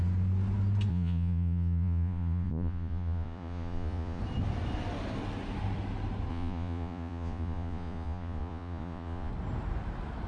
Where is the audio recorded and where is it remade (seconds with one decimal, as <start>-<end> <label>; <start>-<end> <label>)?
0.0-0.9 recorded; 0.9-4.2 remade; 4.2-6.3 recorded; 6.3-9.3 remade; 9.3-10.3 recorded